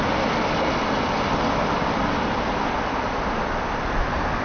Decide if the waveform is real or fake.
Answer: real